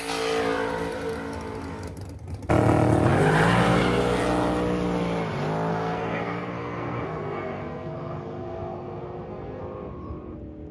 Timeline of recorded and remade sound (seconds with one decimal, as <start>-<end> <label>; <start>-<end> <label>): 0.0-5.7 recorded; 5.7-9.6 remade; 9.6-10.7 recorded